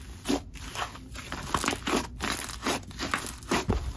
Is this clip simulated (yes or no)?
no